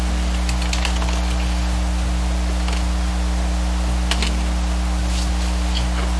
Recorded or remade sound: recorded